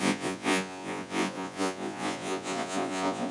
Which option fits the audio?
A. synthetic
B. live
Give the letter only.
A